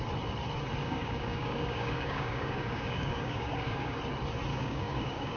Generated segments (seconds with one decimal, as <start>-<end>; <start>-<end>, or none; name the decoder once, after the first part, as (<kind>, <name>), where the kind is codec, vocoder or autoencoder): 0.8-4.0 (codec, DAC); 4.5-5.4